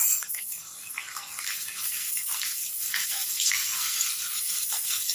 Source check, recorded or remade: remade